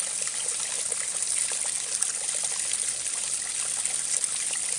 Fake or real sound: real